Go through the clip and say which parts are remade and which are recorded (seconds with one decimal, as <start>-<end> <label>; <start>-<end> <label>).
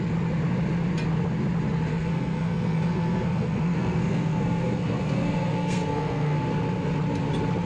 0.0-1.9 recorded; 1.9-6.5 remade; 6.5-7.7 recorded